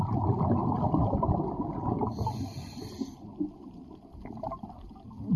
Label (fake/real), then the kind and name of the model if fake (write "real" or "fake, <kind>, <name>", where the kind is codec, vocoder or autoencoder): fake, vocoder, BigVGAN v2